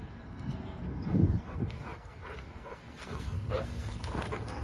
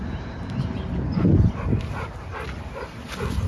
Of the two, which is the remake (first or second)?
first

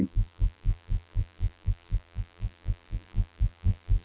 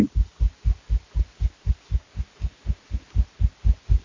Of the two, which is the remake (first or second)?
first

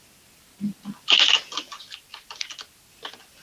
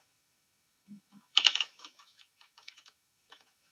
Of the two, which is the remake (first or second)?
second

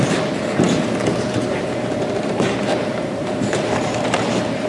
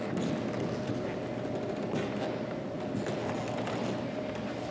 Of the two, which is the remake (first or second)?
first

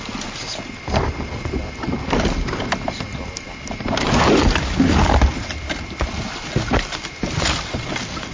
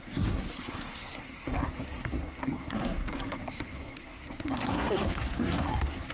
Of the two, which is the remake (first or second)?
second